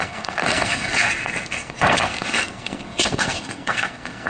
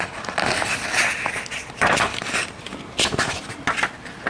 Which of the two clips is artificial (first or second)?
first